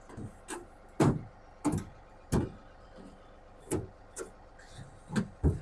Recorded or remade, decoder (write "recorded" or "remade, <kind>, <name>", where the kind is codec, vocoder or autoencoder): recorded